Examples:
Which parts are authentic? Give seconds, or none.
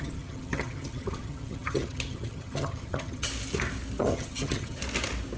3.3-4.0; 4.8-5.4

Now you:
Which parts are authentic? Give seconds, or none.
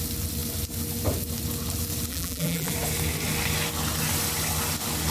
0.0-2.1; 2.7-5.1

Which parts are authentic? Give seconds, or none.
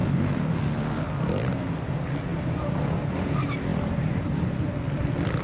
0.0-3.7; 4.7-5.4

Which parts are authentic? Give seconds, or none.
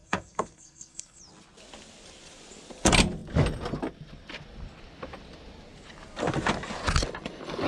1.2-7.7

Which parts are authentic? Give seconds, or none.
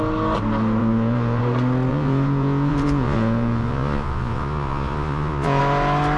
0.0-0.8; 1.4-1.9; 5.6-6.2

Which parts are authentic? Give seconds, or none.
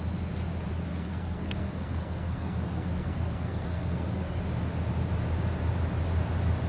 0.0-0.9; 4.4-6.7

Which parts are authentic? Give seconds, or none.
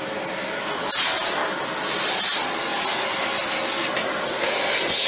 0.0-1.4; 2.1-5.1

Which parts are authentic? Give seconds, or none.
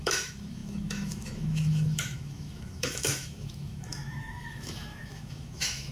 none